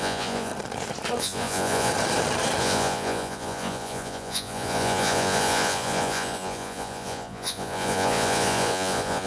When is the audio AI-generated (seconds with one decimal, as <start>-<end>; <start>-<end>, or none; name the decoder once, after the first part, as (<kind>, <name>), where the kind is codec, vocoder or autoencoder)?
0.0-0.5 (vocoder, Vocos); 1.2-1.9; 2.6-9.3